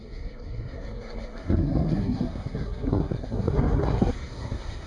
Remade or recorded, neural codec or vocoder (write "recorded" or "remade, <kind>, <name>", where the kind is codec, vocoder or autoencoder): remade, codec, SNAC